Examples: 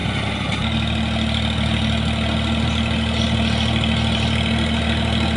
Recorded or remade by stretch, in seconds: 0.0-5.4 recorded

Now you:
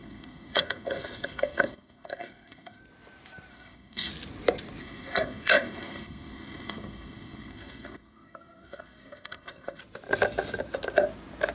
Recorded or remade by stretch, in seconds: 0.0-2.8 remade; 2.8-3.5 recorded; 3.5-4.1 remade; 4.1-4.8 recorded; 4.8-9.8 remade; 9.8-11.5 recorded

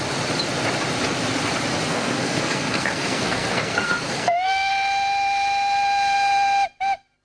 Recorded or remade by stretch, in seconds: 0.0-1.9 recorded; 1.9-4.7 remade; 4.7-7.2 recorded

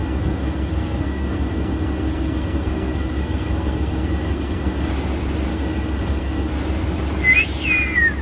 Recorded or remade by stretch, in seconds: 0.0-4.9 remade; 4.9-5.5 recorded; 5.5-6.5 remade; 6.5-8.2 recorded

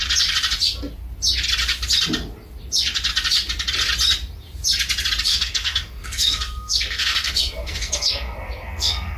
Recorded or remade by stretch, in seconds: 0.0-5.3 recorded; 5.3-9.2 remade